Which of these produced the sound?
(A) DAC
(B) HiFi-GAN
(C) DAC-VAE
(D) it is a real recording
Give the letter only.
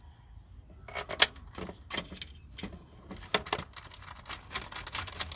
D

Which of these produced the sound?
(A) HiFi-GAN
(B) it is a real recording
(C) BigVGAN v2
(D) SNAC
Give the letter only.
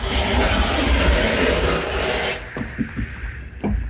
B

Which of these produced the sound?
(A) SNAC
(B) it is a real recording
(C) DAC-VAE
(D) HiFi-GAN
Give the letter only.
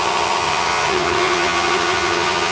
D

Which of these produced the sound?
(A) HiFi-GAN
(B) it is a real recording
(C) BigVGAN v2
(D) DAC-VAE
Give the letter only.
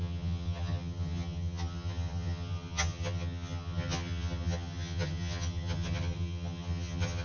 A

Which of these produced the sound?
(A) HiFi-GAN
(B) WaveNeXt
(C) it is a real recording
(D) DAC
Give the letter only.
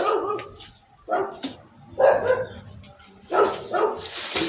C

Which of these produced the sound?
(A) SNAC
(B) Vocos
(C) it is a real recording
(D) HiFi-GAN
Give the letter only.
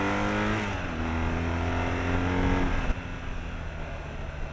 C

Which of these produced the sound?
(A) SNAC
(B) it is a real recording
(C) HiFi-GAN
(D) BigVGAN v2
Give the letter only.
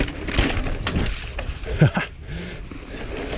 B